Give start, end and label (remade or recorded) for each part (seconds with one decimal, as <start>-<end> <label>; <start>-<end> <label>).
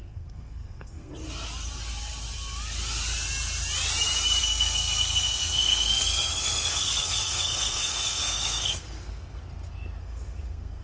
0.0-1.1 remade; 1.1-4.4 recorded; 4.4-9.4 remade; 9.4-10.0 recorded; 10.0-10.8 remade